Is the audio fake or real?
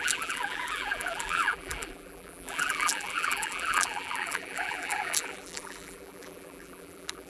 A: fake